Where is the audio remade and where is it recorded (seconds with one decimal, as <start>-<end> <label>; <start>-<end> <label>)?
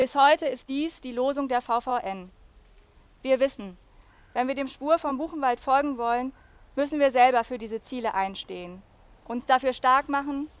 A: 0.0-0.7 remade; 0.7-10.6 recorded